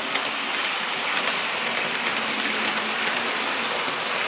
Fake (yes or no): no